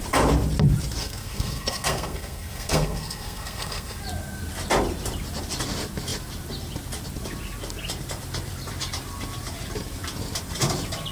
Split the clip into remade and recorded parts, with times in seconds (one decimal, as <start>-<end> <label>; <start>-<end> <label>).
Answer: 0.0-1.0 recorded; 1.0-4.0 remade; 4.0-11.1 recorded

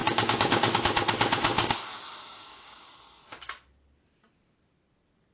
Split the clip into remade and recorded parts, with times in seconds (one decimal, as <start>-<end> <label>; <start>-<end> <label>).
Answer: 0.0-0.8 remade; 0.8-1.5 recorded; 1.5-2.9 remade; 2.9-5.3 recorded

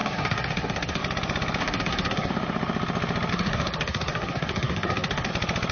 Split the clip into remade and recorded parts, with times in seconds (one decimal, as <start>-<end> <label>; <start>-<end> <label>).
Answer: 0.0-1.0 remade; 1.0-1.6 recorded; 1.6-2.3 remade; 2.3-3.3 recorded; 3.3-5.3 remade; 5.3-5.7 recorded

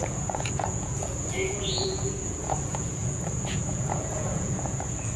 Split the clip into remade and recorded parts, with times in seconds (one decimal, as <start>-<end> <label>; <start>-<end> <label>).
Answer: 0.0-5.2 remade

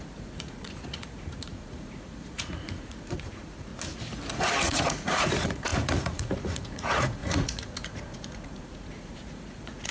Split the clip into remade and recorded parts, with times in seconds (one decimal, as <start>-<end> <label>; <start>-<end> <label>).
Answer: 0.0-3.7 remade; 3.7-4.3 recorded; 4.3-9.9 remade

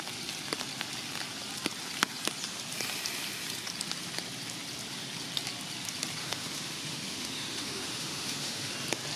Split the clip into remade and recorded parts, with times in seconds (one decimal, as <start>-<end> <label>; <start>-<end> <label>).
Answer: 0.0-6.2 recorded; 6.2-8.7 remade; 8.7-9.2 recorded

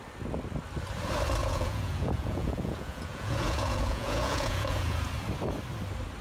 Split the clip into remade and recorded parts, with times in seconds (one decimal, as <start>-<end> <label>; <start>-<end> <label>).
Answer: 0.0-1.4 recorded; 1.4-5.1 remade; 5.1-6.2 recorded